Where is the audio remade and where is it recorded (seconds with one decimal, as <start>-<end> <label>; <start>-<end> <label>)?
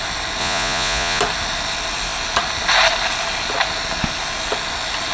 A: 0.0-0.4 recorded; 0.4-1.2 remade; 1.2-5.1 recorded